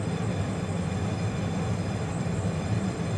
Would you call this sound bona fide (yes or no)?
yes